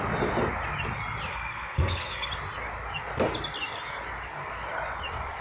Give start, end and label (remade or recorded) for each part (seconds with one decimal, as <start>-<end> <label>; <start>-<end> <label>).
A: 0.0-1.3 recorded; 1.3-2.3 remade; 2.3-5.4 recorded